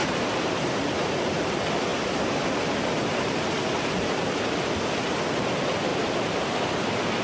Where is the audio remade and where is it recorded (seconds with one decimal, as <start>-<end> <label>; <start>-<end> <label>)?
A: 0.0-1.5 remade; 1.5-5.9 recorded; 5.9-6.7 remade; 6.7-7.2 recorded